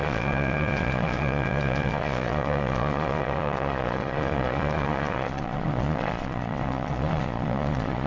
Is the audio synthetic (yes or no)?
yes